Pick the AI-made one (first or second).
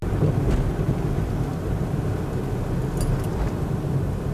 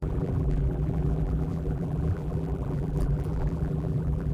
second